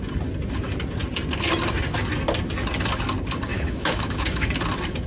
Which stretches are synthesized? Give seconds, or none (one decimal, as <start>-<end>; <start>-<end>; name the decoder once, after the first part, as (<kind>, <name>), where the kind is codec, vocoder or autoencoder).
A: 3.5-4.5 (autoencoder, DAC-VAE)